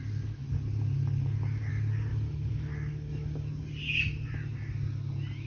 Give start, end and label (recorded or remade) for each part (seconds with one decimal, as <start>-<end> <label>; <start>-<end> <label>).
0.0-2.1 recorded; 2.1-3.5 remade; 3.5-5.5 recorded